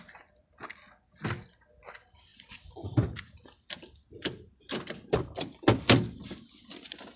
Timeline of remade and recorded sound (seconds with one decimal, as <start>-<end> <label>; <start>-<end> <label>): 0.0-7.2 recorded